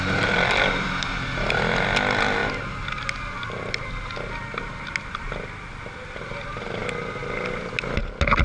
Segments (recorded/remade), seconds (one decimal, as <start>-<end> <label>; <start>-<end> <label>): 0.0-8.4 recorded